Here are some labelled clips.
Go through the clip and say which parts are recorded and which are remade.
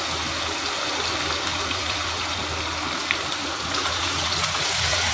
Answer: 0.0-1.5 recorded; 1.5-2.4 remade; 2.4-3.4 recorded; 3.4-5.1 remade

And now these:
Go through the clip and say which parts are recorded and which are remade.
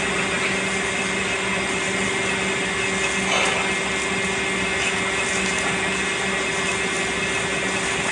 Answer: 0.0-8.1 recorded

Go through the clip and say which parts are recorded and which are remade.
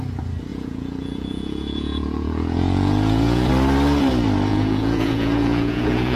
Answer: 0.0-0.5 recorded; 0.5-3.5 remade; 3.5-4.5 recorded; 4.5-6.2 remade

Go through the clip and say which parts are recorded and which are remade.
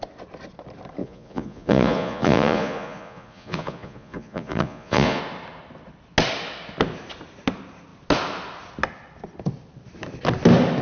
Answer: 0.0-1.0 recorded; 1.0-5.2 remade; 5.2-10.8 recorded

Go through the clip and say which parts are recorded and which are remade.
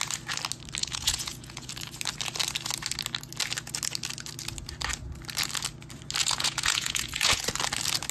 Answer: 0.0-0.8 recorded; 0.8-1.7 remade; 1.7-6.2 recorded; 6.2-7.4 remade; 7.4-8.1 recorded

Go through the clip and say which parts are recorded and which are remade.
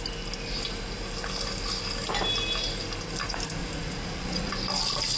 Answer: 0.0-3.6 recorded; 3.6-4.5 remade; 4.5-5.2 recorded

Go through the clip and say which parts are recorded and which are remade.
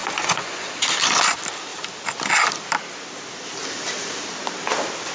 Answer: 0.0-0.7 remade; 0.7-5.1 recorded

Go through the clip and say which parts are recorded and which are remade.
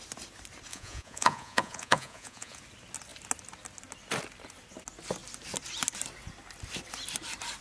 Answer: 0.0-0.7 recorded; 0.7-2.6 remade; 2.6-7.6 recorded